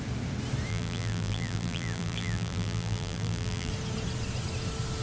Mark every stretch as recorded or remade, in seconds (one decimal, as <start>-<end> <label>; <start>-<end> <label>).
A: 0.0-0.7 recorded; 0.7-3.7 remade; 3.7-5.0 recorded